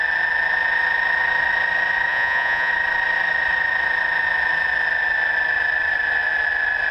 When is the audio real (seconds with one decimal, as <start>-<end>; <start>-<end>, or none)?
0.0-2.1; 2.7-6.9